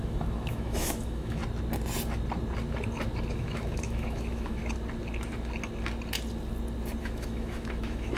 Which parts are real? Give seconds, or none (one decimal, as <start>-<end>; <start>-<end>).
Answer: 1.4-3.3; 4.6-7.0